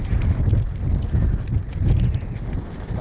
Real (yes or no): yes